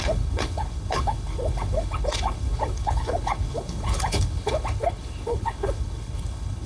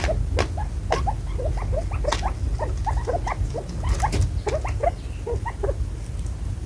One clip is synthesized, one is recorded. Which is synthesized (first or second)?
first